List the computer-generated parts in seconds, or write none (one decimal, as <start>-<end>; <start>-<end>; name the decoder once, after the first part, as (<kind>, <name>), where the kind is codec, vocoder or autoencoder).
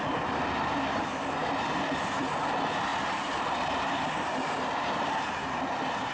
none